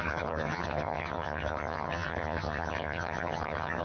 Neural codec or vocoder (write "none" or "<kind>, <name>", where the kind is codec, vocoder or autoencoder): vocoder, HiFi-GAN